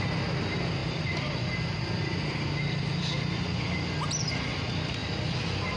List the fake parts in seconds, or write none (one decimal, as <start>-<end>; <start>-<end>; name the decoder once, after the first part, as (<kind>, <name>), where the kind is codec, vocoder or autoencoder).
none